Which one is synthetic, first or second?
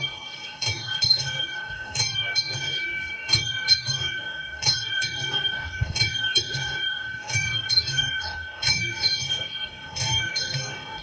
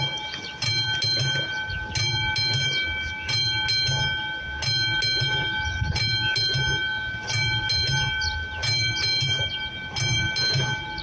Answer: first